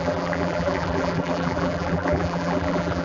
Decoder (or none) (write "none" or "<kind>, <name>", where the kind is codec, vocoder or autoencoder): vocoder, BigVGAN v2